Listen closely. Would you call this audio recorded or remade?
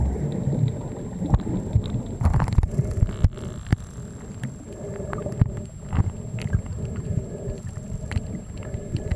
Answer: recorded